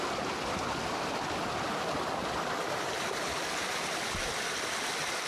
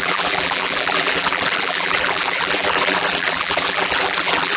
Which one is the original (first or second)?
first